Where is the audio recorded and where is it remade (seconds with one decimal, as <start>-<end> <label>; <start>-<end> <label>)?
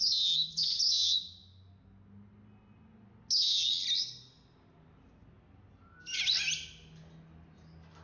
0.0-8.0 recorded